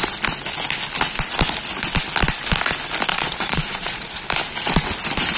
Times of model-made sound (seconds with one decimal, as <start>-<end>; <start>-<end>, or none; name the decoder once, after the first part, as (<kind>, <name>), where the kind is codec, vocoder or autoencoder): 3.1-4.2 (vocoder, Vocos)